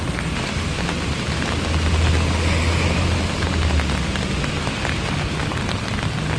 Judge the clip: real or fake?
real